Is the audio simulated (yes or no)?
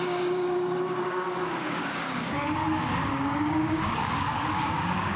yes